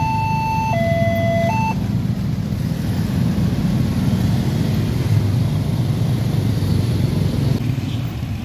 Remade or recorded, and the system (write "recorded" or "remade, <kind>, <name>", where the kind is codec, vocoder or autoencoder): recorded